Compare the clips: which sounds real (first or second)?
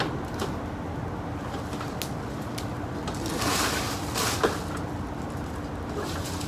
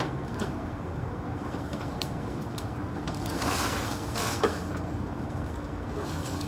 first